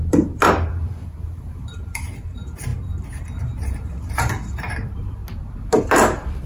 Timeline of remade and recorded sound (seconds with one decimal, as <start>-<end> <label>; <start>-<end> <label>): 0.0-2.7 remade; 2.7-3.2 recorded; 3.2-5.2 remade; 5.2-5.8 recorded; 5.8-6.5 remade